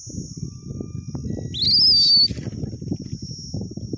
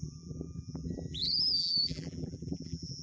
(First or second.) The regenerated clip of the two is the second